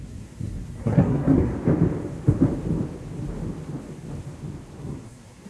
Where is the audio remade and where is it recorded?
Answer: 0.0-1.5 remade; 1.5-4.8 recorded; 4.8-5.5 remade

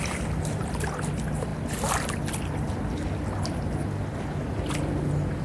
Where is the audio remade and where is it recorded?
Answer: 0.0-5.4 recorded